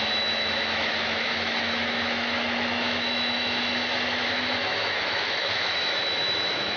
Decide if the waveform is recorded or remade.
remade